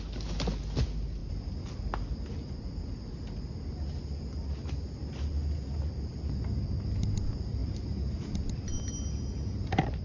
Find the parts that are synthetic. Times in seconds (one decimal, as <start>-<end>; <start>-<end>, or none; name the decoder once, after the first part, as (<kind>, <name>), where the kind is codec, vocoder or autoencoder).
none